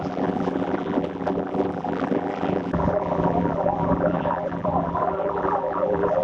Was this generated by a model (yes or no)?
yes